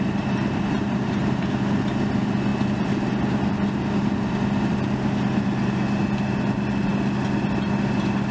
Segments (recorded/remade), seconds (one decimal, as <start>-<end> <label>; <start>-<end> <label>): 0.0-8.3 recorded